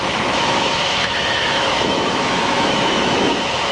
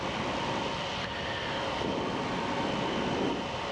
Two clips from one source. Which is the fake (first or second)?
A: first